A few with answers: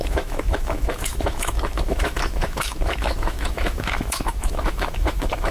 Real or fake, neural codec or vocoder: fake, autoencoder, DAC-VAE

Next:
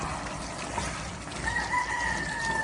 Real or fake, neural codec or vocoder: real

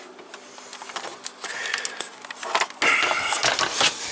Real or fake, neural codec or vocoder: real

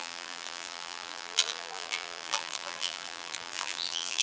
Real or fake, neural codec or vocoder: fake, vocoder, BigVGAN v2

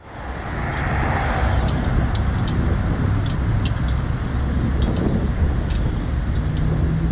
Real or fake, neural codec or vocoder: real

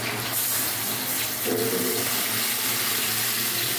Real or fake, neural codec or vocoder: real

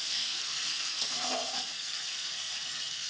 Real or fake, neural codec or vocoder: fake, codec, SNAC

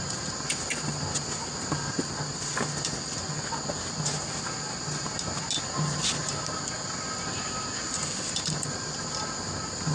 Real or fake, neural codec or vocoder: real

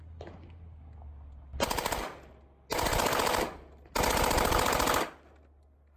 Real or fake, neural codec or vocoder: real